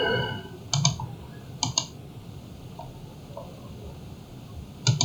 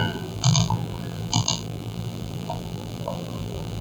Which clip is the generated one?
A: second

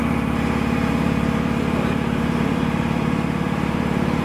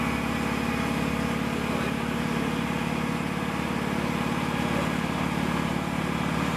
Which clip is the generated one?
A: first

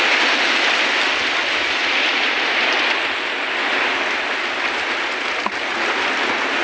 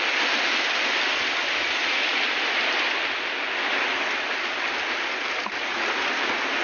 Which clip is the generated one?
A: second